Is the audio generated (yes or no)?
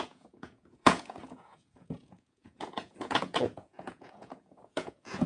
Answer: yes